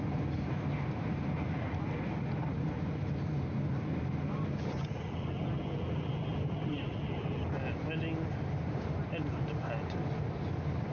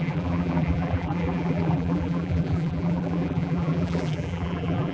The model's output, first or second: second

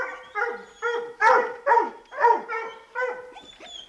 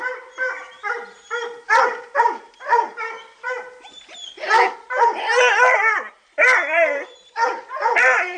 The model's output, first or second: second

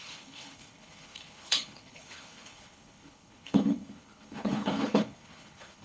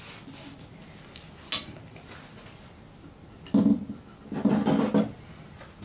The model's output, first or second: first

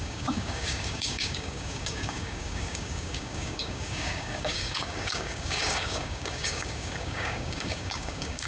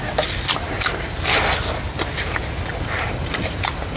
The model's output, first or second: first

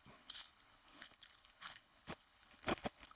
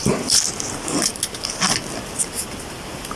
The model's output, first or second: first